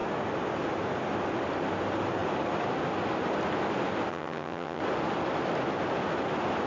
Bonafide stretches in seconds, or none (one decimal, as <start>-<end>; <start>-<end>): 0.0-4.1; 4.8-6.7